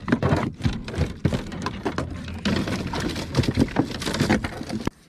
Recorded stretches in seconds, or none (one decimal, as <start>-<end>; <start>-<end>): 0.0-5.1

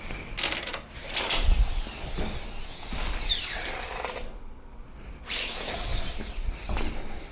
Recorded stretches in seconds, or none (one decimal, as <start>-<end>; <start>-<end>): 0.0-7.3

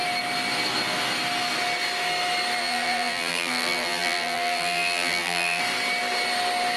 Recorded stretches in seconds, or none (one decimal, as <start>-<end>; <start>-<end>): 0.0-2.6; 5.6-6.8

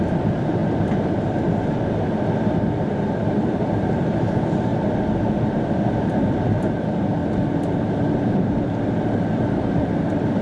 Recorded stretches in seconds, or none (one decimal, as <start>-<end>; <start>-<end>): 0.6-2.8; 4.7-5.7; 7.2-7.7

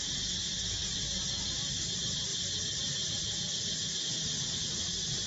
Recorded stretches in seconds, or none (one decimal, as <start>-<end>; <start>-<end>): 0.0-5.3

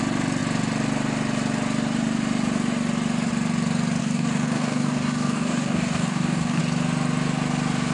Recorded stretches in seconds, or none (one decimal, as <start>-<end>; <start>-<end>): 0.0-4.0; 6.6-7.9

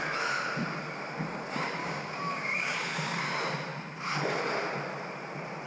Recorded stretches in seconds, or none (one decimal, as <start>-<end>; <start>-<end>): 0.0-1.8; 3.2-5.7

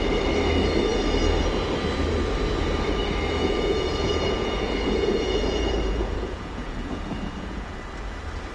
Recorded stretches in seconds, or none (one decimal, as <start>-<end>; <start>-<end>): 0.0-3.4; 7.8-8.5